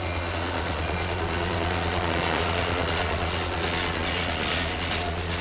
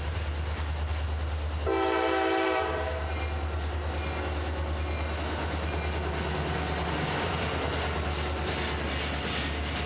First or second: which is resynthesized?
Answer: first